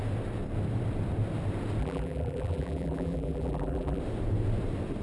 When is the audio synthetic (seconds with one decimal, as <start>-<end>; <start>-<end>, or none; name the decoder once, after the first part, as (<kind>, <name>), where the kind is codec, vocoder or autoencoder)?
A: 1.8-4.0 (vocoder, BigVGAN v2)